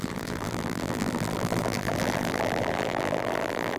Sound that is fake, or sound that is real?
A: fake